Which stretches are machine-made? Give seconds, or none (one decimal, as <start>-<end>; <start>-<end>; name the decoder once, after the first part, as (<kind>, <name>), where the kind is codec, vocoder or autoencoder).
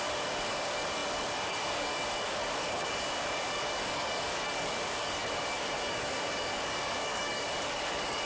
0.0-8.3 (codec, DAC)